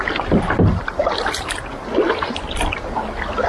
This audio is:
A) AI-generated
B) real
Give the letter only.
B